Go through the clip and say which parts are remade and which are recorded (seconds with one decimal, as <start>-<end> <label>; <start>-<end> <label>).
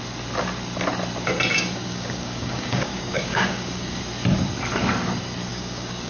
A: 0.0-1.5 recorded; 1.5-4.0 remade; 4.0-5.5 recorded; 5.5-6.1 remade